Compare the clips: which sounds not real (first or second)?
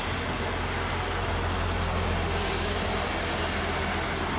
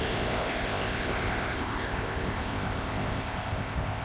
second